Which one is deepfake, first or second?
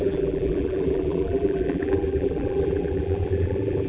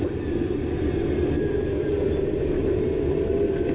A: first